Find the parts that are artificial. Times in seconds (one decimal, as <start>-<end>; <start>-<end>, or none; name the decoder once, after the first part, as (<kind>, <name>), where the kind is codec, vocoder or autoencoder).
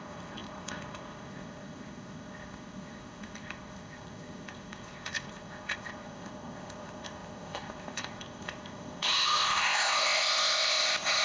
0.0-11.2 (codec, ZipCodec)